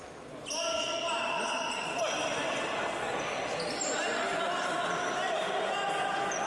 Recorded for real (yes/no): yes